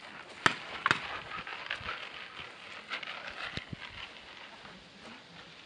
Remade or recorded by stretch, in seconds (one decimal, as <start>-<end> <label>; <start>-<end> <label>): 0.0-5.7 recorded